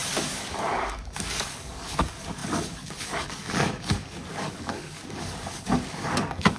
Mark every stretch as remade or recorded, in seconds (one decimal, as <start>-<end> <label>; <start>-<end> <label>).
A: 0.0-6.6 remade